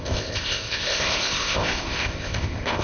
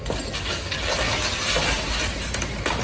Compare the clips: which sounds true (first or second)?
second